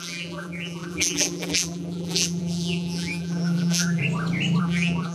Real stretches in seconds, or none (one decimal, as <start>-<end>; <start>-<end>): 4.0-4.6